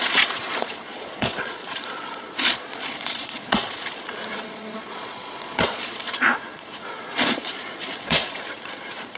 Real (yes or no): no